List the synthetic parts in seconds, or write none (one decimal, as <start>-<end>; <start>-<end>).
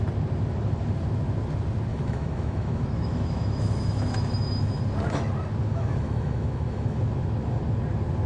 1.9-4.8; 5.7-7.0